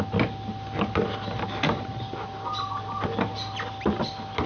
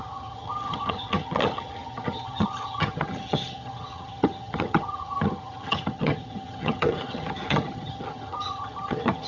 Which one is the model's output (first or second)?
second